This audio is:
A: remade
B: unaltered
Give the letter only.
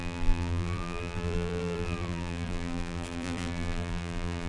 A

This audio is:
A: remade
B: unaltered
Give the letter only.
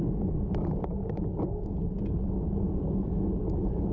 B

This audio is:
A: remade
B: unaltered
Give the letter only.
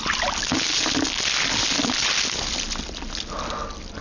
B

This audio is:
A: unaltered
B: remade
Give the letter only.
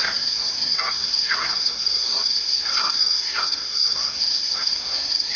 B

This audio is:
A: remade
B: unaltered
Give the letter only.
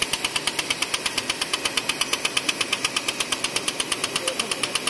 B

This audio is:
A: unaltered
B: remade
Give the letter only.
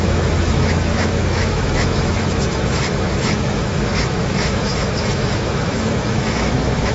B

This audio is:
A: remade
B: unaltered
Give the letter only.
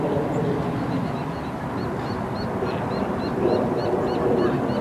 B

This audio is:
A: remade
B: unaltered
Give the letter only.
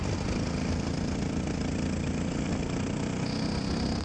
B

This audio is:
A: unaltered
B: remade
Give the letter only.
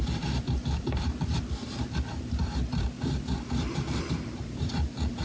B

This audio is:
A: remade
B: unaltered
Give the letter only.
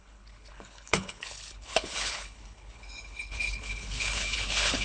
A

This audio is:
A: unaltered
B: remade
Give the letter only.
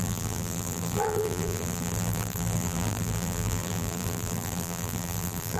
B